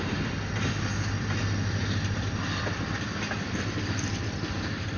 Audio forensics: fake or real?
fake